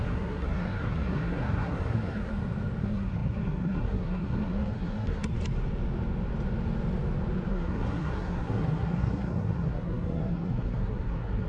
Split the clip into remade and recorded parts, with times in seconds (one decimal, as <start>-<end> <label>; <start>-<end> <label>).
0.0-2.3 remade; 2.3-2.8 recorded; 2.8-5.3 remade; 5.3-7.5 recorded; 7.5-11.5 remade